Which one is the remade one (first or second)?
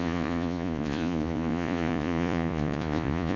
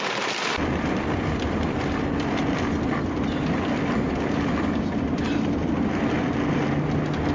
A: first